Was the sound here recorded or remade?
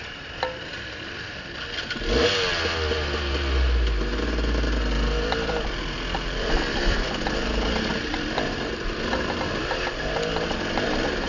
recorded